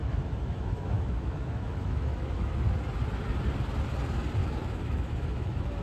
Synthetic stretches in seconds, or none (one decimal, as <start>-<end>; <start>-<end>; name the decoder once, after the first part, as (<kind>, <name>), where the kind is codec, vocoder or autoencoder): 0.0-2.5 (autoencoder, DAC-VAE); 4.4-5.8

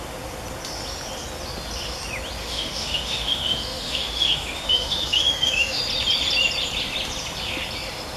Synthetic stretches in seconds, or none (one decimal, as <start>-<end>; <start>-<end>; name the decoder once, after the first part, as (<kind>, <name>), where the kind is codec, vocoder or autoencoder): 2.4-5.8 (autoencoder, DAC-VAE)

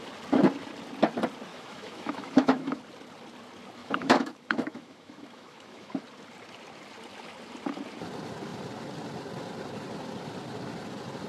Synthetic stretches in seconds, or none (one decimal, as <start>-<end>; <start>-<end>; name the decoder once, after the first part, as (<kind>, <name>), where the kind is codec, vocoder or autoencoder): 1.5-2.8 (autoencoder, DAC-VAE); 3.8-6.0

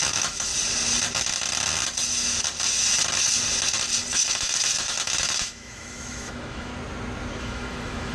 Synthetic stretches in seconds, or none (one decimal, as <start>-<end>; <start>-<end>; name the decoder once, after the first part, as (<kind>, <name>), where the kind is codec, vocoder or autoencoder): 0.0-0.5 (autoencoder, DAC-VAE); 4.1-6.7; 7.4-8.1

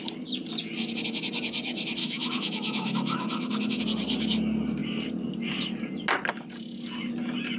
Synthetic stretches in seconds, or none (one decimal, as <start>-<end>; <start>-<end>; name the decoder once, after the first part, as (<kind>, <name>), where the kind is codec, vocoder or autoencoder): 2.0-3.8 (autoencoder, DAC-VAE)

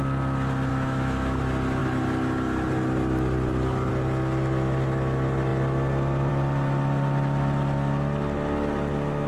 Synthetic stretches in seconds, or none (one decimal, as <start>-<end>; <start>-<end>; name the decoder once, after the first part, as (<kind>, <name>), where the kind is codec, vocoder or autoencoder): 0.7-1.4 (autoencoder, DAC-VAE)